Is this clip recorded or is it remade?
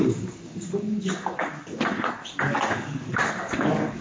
remade